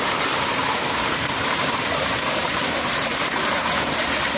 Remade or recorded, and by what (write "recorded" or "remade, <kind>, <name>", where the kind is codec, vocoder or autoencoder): remade, vocoder, BigVGAN v2